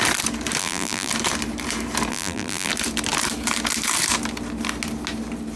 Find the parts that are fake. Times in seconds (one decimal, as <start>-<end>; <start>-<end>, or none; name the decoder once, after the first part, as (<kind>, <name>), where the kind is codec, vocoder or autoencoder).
0.6-1.1 (vocoder, BigVGAN v2); 2.1-2.7

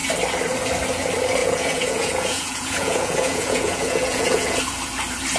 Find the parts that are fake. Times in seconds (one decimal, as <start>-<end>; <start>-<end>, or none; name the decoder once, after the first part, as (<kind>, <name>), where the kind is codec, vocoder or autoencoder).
1.4-4.6 (vocoder, Vocos)

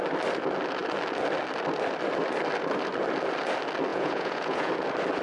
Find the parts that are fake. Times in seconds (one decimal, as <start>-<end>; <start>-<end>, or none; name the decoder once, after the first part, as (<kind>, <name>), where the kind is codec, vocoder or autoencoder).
3.9-4.7 (vocoder, Vocos)

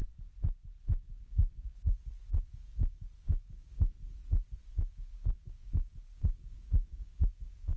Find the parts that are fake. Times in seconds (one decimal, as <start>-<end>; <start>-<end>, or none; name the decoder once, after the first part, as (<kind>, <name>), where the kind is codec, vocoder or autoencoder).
0.8-1.8 (codec, DAC); 2.4-4.0; 4.7-7.8

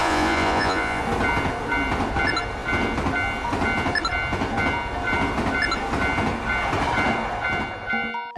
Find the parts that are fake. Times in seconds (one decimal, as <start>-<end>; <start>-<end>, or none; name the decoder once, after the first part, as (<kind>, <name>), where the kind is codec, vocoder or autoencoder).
0.0-1.0 (vocoder, Vocos)

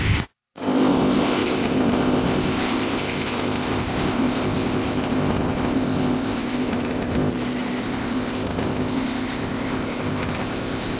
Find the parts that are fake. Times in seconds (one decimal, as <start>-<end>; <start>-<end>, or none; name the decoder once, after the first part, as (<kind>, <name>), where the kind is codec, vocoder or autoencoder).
0.0-7.3 (codec, ZipCodec); 7.8-11.0